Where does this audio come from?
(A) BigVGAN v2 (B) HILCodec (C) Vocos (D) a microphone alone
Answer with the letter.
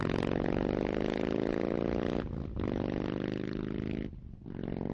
D